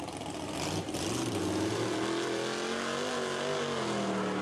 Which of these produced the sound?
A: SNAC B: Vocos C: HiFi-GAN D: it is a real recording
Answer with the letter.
D